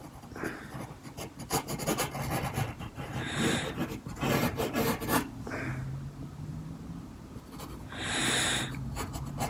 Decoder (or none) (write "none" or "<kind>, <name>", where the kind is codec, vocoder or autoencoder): none